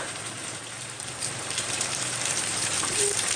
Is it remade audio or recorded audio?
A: remade